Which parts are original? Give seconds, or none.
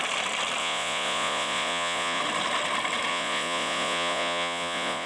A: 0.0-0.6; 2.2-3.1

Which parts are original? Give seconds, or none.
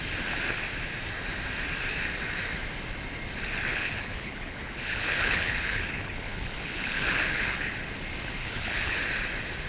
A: 0.0-3.7; 7.7-8.4; 9.0-9.7